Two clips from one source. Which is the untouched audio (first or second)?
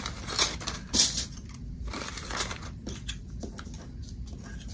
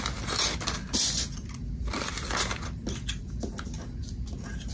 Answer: second